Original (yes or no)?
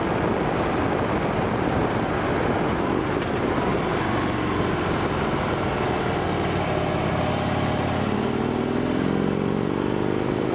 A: yes